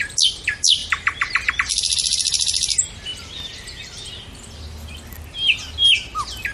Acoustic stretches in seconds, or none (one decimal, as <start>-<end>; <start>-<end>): 0.0-0.8; 1.5-3.1; 4.1-6.5